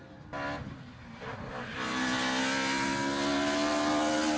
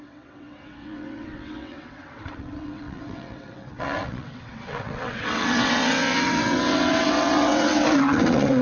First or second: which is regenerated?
second